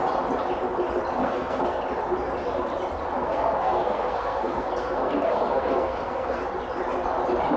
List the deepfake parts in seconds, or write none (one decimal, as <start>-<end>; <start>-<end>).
1.2-1.8; 3.2-6.4

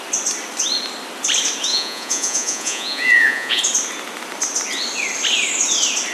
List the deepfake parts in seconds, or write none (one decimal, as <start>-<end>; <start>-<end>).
1.7-3.6

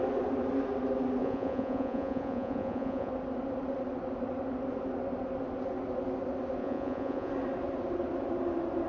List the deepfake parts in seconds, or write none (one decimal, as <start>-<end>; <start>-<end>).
1.2-3.1; 6.6-7.3

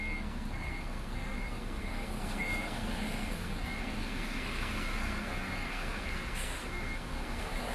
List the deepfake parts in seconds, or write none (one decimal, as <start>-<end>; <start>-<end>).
0.0-7.7

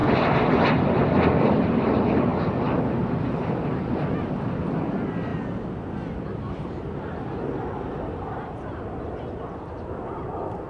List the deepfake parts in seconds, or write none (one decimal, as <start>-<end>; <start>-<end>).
none

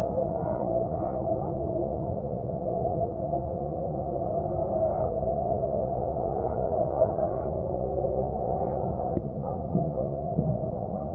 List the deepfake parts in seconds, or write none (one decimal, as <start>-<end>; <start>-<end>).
0.0-4.3; 5.0-11.1

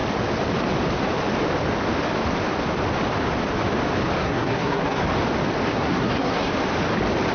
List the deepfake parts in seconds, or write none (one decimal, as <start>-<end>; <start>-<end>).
4.2-5.0; 5.7-6.5

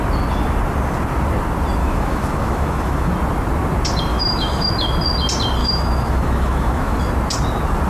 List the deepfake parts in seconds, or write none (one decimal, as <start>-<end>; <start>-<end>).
1.8-3.1; 4.1-4.7; 5.6-7.0